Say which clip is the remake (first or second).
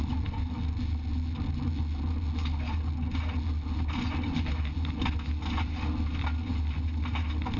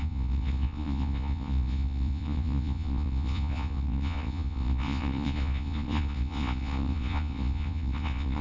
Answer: second